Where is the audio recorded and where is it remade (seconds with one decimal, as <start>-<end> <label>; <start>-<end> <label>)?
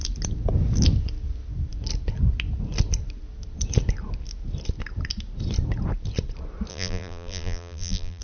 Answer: 0.0-6.7 recorded; 6.7-8.2 remade